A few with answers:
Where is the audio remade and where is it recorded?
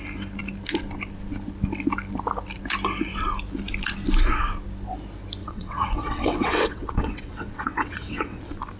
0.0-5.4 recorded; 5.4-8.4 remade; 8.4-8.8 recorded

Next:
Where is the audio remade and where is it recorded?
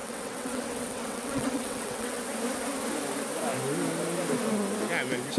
0.0-2.2 remade; 2.2-5.4 recorded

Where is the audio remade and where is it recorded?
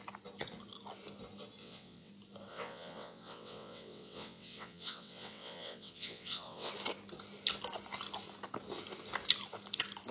0.0-1.6 recorded; 1.6-2.1 remade; 2.1-2.5 recorded; 2.5-6.7 remade; 6.7-10.1 recorded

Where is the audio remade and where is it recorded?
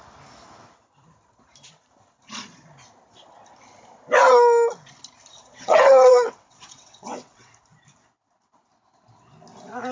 0.0-5.4 recorded; 5.4-7.5 remade; 7.5-9.9 recorded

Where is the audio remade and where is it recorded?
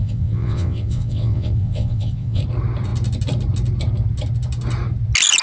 0.0-2.4 remade; 2.4-5.4 recorded